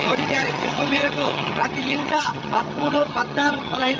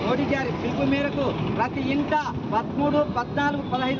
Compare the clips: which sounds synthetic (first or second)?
first